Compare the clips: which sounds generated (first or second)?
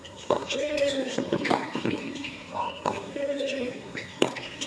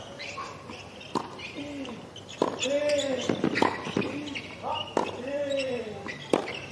first